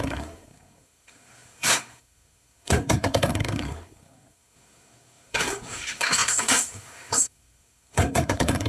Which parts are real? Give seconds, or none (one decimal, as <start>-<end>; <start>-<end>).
none